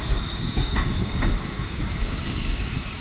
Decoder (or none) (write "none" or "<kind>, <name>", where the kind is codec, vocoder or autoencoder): codec, DAC